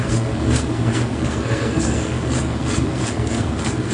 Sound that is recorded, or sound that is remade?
remade